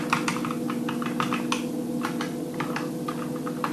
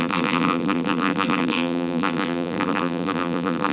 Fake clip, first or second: second